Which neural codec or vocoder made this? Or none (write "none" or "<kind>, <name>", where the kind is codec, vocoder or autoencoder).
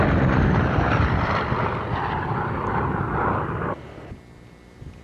none